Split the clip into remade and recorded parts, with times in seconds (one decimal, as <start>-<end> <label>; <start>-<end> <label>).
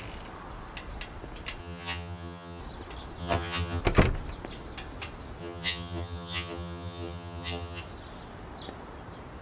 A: 0.0-1.6 recorded; 1.6-2.6 remade; 2.6-3.2 recorded; 3.2-3.8 remade; 3.8-5.4 recorded; 5.4-7.8 remade; 7.8-9.4 recorded